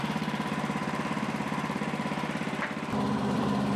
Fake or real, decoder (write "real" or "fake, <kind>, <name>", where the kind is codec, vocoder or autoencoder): fake, vocoder, BigVGAN v2